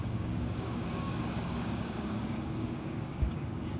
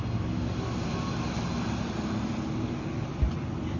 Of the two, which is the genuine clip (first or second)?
second